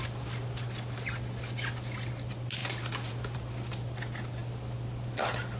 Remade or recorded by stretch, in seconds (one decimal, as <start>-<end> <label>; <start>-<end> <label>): 0.0-5.6 recorded